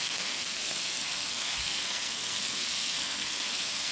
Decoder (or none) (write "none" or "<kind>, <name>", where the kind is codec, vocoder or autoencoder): codec, SNAC